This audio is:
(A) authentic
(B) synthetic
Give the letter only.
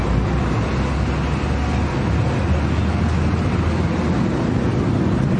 A